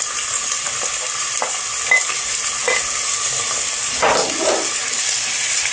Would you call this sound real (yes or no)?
yes